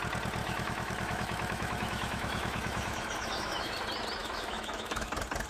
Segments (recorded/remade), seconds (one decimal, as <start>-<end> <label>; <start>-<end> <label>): 0.0-0.4 recorded; 0.4-3.7 remade; 3.7-4.2 recorded; 4.2-5.1 remade; 5.1-5.5 recorded